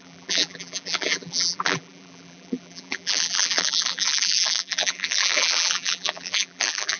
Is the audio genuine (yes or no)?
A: no